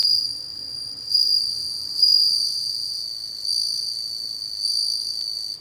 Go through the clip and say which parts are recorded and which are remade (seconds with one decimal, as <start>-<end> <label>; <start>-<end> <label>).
0.0-5.6 recorded